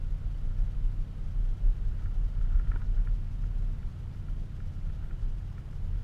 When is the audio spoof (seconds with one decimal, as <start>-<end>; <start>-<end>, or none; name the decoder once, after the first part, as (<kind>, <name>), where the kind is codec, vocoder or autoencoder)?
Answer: 3.8-5.2 (vocoder, BigVGAN v2)